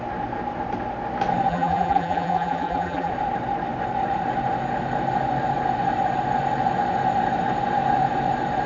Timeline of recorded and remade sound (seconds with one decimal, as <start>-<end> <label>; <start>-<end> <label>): 0.0-1.5 recorded; 1.5-3.1 remade; 3.1-8.7 recorded